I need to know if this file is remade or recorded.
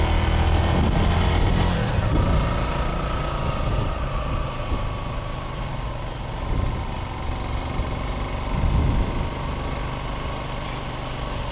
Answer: recorded